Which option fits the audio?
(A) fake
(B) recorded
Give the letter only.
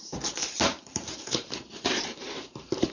A